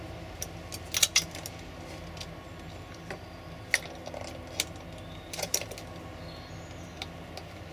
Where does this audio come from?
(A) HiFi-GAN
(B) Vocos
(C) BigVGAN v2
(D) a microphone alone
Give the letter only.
D